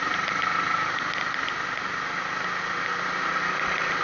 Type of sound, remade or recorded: recorded